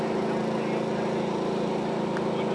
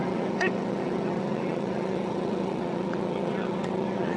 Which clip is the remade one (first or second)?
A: second